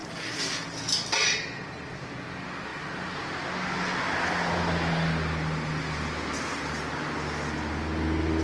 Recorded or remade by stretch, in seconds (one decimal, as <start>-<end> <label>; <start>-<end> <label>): 0.0-8.4 recorded